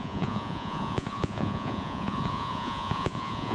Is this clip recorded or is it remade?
remade